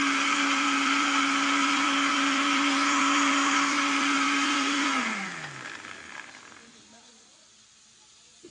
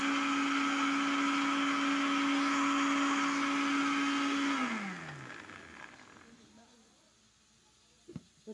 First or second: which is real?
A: second